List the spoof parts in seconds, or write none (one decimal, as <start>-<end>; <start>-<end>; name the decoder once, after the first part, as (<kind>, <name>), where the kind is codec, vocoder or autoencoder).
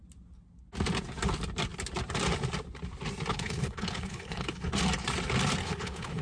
3.3-4.7 (codec, HILCodec); 5.6-6.2